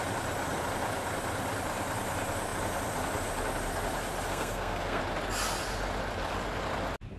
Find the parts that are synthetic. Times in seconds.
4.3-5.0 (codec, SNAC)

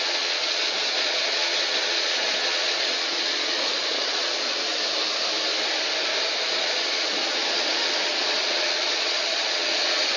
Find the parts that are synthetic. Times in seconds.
0.0-4.7 (vocoder, Vocos); 6.5-10.2

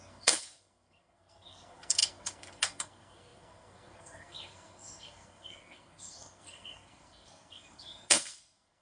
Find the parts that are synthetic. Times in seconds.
0.0-8.8 (codec, SNAC)

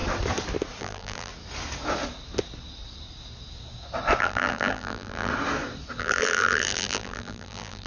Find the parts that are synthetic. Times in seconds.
0.8-1.3 (vocoder, BigVGAN v2); 4.2-5.3; 6.0-7.9

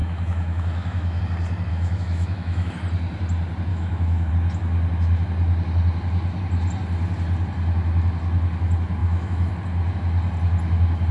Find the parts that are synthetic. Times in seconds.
0.0-1.2 (autoencoder, DAC-VAE); 1.7-2.7; 3.7-4.3; 9.0-9.5

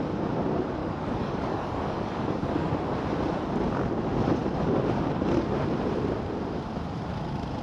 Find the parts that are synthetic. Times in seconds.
0.8-2.7 (codec, DAC)